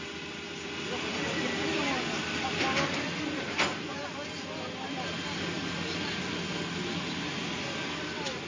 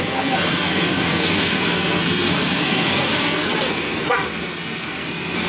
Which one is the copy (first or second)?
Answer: second